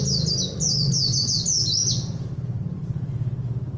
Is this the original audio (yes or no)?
yes